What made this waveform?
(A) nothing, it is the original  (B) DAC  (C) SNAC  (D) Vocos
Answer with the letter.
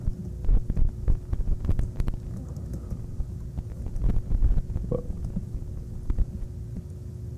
A